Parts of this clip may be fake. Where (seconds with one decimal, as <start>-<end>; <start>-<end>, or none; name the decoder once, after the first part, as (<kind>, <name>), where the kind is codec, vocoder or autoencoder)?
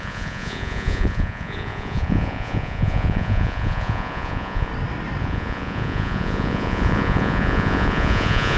0.0-4.7 (vocoder, Vocos); 5.2-8.6